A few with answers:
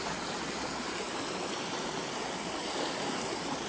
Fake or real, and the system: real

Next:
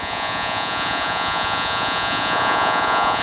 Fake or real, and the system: fake, vocoder, Vocos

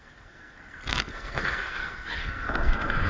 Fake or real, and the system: fake, codec, SNAC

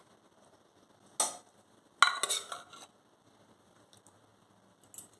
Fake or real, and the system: real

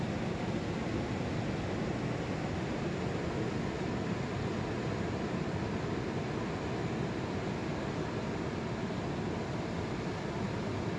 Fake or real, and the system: real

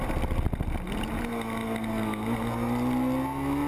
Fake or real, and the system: real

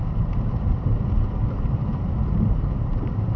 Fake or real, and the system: fake, vocoder, BigVGAN v2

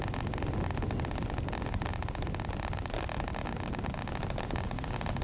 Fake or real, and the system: real